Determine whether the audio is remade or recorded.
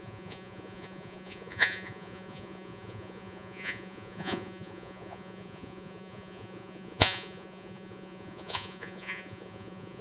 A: remade